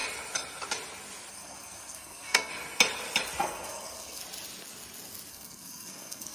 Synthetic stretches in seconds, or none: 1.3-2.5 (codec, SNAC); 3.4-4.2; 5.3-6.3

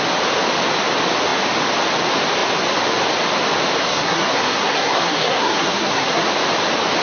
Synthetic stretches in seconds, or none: 3.8-6.2 (codec, SNAC)

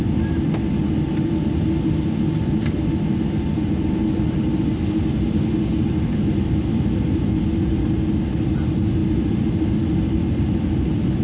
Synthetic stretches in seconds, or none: none

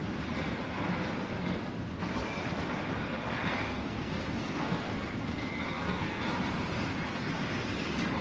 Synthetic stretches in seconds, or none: 1.2-1.9 (codec, SNAC); 3.4-6.2